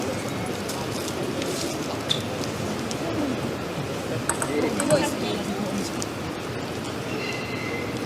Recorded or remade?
recorded